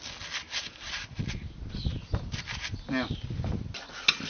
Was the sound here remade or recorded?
recorded